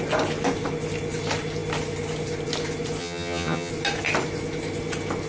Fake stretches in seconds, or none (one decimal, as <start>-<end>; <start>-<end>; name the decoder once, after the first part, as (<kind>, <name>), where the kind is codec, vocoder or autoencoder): 3.0-3.7 (vocoder, HiFi-GAN)

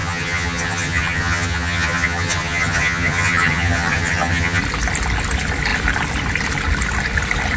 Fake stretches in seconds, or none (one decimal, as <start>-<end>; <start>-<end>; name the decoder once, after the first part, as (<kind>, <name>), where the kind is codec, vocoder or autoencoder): 0.0-4.6 (vocoder, HiFi-GAN)

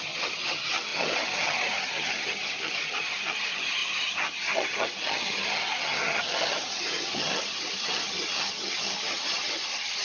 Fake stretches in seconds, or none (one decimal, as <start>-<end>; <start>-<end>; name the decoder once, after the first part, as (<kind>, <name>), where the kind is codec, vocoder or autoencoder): 0.0-10.0 (vocoder, HiFi-GAN)

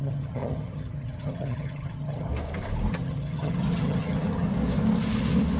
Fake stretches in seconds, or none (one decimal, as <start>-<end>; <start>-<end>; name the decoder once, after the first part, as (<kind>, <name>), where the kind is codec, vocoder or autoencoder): 0.0-2.3 (vocoder, HiFi-GAN); 2.9-4.5

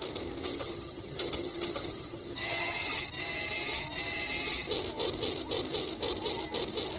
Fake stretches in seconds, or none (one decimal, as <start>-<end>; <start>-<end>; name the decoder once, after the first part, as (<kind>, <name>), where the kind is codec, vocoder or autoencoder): 0.5-3.0 (vocoder, HiFi-GAN)